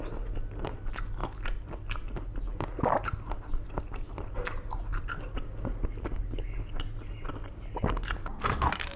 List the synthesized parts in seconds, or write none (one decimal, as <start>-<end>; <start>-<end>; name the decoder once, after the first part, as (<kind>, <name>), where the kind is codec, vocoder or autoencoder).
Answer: none